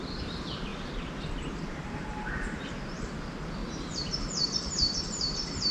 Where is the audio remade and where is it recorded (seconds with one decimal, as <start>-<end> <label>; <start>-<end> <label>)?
0.0-0.7 recorded; 0.7-3.1 remade; 3.1-3.6 recorded; 3.6-5.7 remade